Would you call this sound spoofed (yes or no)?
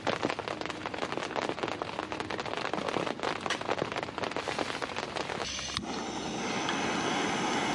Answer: no